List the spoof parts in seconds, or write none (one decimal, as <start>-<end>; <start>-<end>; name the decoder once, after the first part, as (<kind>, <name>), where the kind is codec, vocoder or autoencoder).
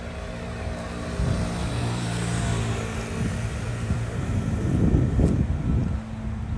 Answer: 1.6-2.4 (vocoder, BigVGAN v2); 3.7-4.8